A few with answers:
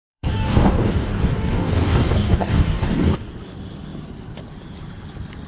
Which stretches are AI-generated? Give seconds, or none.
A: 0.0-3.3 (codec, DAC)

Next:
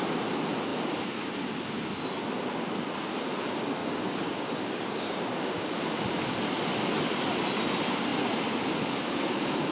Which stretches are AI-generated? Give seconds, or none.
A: 3.8-5.7 (codec, DAC)

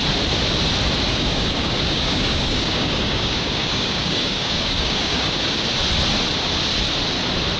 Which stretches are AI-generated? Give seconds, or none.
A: 1.1-5.7 (codec, DAC)

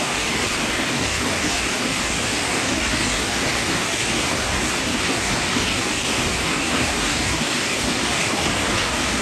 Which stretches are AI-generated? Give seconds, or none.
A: 0.0-9.2 (codec, DAC)

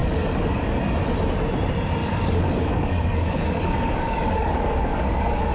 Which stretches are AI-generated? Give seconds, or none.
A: 0.0-0.8 (codec, DAC); 2.0-5.5

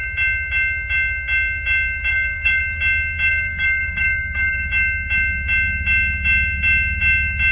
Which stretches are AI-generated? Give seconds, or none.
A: 2.1-2.6 (codec, DAC); 3.3-4.7